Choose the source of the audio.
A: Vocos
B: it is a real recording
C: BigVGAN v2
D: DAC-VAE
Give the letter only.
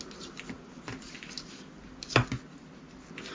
B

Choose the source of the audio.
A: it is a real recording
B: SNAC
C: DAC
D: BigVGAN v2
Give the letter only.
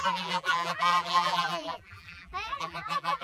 D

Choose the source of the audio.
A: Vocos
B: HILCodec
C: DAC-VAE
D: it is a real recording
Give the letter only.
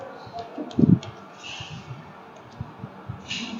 D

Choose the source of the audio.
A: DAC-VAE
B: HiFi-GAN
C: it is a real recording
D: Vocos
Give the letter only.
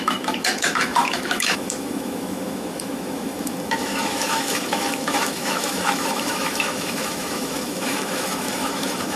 A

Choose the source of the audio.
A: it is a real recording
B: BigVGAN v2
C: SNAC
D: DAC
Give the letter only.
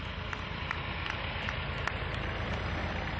A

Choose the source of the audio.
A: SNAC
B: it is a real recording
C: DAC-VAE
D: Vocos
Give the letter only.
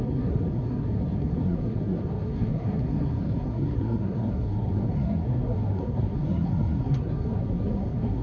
A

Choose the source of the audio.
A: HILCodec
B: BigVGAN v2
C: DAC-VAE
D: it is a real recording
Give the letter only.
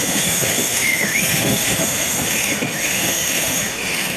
C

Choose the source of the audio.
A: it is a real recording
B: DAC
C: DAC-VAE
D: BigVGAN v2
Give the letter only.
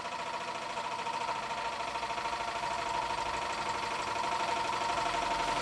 D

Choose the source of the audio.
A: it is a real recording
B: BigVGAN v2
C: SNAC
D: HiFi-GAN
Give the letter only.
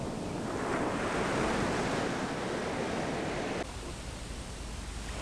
A